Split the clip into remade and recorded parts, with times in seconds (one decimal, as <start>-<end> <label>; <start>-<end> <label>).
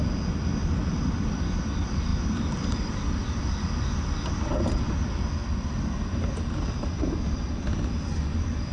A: 0.0-2.1 recorded; 2.1-3.0 remade; 3.0-8.7 recorded